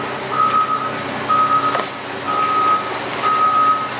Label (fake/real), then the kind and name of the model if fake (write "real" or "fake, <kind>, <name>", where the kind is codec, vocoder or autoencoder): real